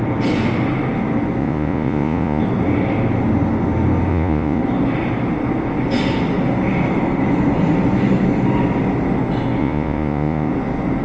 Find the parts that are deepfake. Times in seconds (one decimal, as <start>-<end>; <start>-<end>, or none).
1.4-2.4; 4.1-4.6; 9.6-10.5

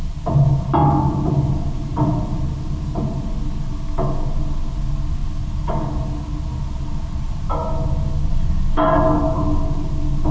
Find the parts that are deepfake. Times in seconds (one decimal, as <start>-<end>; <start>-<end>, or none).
none

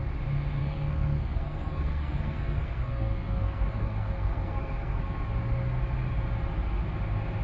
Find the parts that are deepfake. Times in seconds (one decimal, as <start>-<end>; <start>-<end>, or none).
0.6-5.0

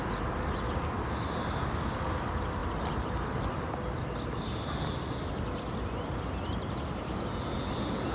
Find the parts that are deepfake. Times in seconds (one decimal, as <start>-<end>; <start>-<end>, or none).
none

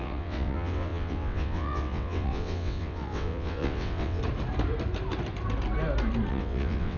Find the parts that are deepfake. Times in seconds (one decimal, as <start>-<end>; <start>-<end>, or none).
0.0-4.2; 6.3-7.0

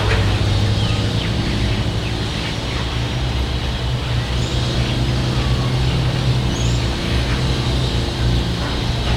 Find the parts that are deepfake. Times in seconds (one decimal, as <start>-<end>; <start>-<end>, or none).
none